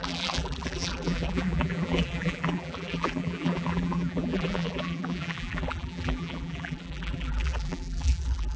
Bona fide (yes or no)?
no